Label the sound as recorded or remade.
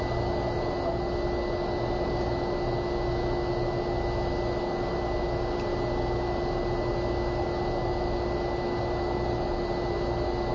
recorded